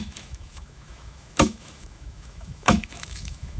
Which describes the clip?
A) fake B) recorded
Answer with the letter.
A